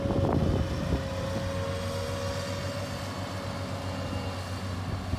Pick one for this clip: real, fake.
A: real